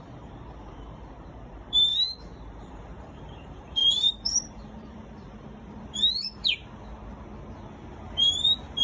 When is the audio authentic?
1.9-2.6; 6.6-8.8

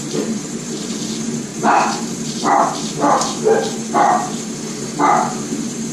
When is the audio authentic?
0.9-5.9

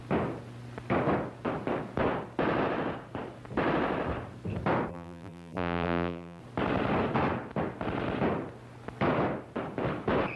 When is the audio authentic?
0.0-4.9; 6.4-10.4